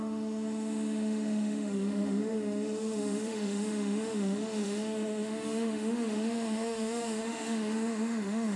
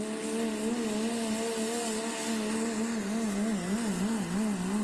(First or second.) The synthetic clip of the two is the first